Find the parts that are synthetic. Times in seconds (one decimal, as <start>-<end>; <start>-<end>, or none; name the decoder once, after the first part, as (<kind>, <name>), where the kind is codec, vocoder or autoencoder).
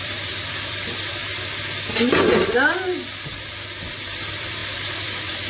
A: 0.0-1.2 (vocoder, BigVGAN v2); 3.9-5.5